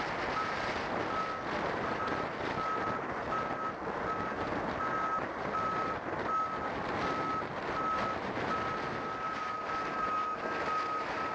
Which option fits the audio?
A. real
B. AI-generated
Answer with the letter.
A